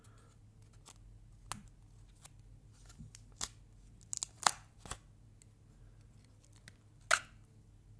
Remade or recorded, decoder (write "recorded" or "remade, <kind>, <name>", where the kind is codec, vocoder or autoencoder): recorded